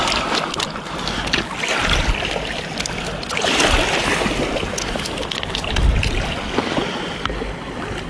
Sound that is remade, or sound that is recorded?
recorded